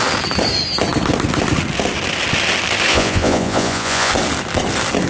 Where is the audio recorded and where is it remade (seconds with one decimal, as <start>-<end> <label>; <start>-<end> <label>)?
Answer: 0.0-2.9 recorded; 2.9-4.1 remade; 4.1-5.1 recorded